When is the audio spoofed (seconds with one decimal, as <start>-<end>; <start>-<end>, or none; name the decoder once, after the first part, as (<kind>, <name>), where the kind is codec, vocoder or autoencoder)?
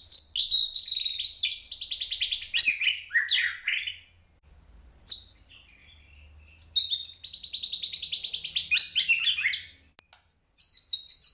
none